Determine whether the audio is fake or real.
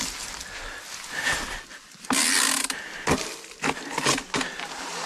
real